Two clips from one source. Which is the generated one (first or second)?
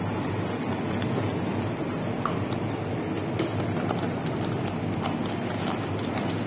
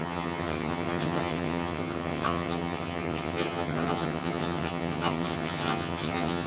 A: second